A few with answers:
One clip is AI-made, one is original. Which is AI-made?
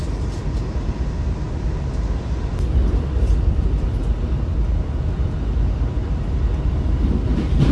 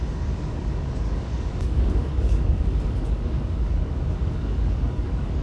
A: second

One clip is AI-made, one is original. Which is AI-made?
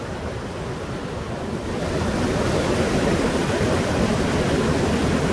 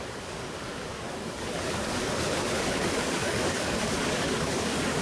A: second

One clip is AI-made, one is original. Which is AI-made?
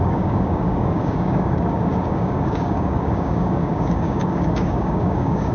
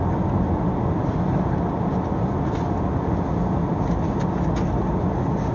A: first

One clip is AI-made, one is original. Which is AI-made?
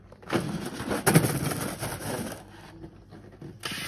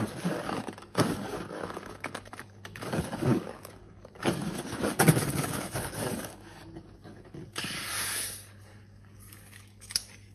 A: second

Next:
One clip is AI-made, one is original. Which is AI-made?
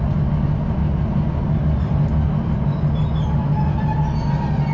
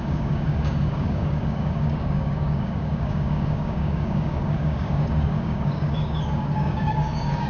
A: second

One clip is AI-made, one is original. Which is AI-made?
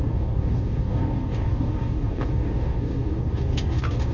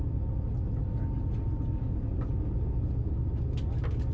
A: first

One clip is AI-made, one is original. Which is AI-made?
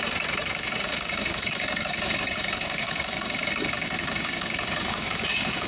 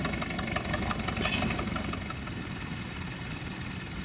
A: first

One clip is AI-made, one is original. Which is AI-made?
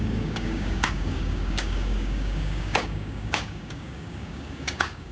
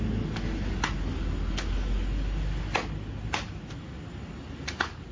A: first